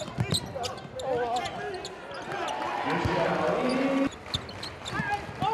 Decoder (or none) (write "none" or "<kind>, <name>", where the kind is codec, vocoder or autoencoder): none